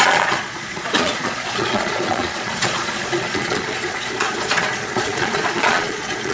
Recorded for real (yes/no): no